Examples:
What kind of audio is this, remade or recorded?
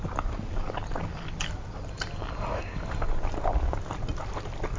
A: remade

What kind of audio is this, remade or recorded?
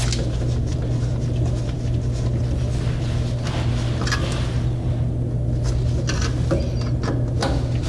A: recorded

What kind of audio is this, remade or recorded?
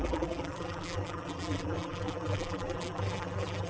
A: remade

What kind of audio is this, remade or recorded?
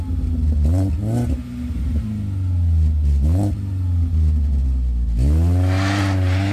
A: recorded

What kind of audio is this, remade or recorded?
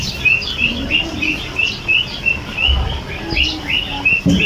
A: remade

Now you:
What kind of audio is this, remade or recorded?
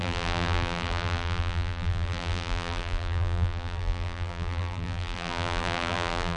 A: remade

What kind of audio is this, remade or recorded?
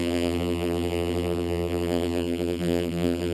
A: remade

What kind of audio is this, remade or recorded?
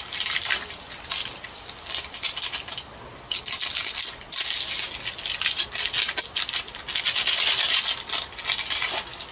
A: recorded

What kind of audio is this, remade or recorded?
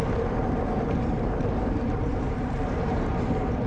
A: remade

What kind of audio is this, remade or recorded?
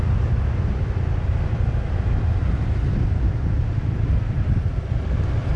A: recorded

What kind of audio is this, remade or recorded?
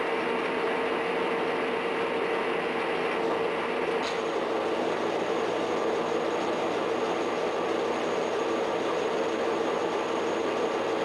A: recorded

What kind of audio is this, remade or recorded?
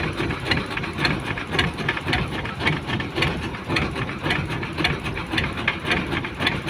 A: remade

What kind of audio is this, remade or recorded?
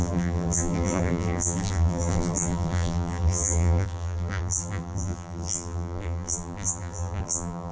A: remade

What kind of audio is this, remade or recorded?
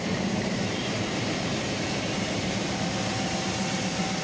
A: remade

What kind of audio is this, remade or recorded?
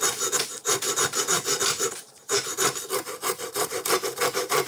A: remade